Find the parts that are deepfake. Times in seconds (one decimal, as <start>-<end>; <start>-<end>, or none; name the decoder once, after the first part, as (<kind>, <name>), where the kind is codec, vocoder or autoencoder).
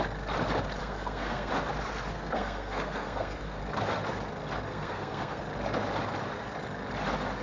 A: 0.8-1.5 (codec, SNAC); 2.1-3.6; 4.7-5.4